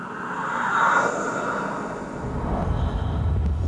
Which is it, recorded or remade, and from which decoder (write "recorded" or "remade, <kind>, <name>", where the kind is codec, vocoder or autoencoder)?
recorded